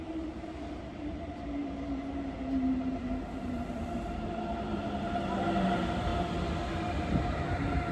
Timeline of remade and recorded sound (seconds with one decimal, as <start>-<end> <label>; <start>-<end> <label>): 0.0-6.1 remade; 6.1-7.0 recorded; 7.0-7.9 remade